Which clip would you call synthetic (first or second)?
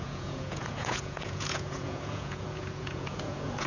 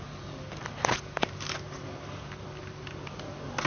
first